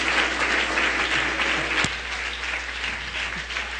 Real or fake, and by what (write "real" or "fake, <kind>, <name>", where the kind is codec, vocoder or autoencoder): real